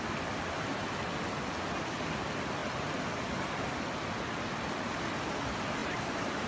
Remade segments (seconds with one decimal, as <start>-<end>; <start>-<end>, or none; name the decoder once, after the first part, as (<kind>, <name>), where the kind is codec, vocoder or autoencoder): 5.8-6.5 (vocoder, BigVGAN v2)

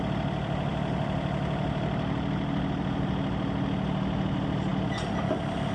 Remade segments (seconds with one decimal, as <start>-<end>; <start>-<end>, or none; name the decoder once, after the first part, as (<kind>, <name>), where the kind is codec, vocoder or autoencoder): none